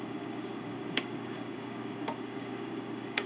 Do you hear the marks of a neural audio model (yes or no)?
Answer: yes